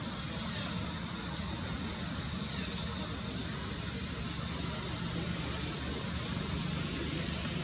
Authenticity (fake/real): real